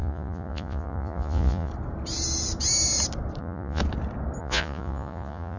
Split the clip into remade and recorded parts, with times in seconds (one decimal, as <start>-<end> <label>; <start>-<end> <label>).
0.0-1.7 remade; 1.7-3.4 recorded; 3.4-3.8 remade; 3.8-4.4 recorded; 4.4-5.6 remade